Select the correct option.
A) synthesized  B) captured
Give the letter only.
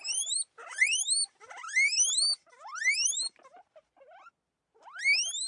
B